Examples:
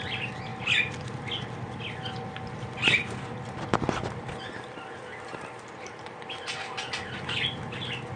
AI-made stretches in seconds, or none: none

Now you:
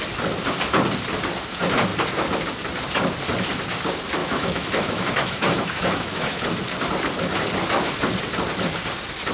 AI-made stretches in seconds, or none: 4.2-6.4 (autoencoder, DAC-VAE)

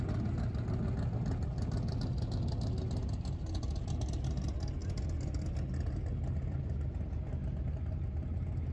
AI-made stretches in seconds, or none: none

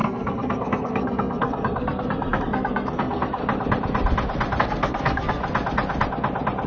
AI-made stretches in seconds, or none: 0.0-3.4 (codec, SNAC); 4.6-5.4

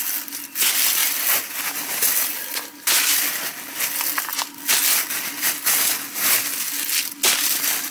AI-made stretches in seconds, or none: none